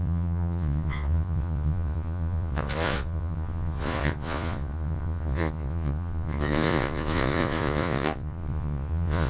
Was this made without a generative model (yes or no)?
no